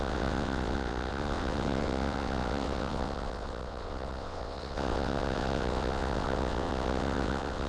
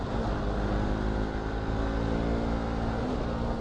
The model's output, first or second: first